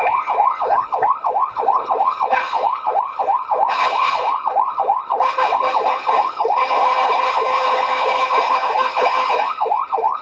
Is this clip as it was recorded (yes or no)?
no